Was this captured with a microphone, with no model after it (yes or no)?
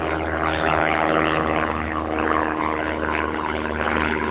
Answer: no